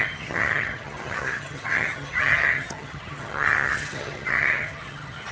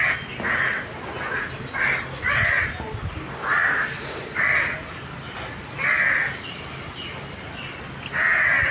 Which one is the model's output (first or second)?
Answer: first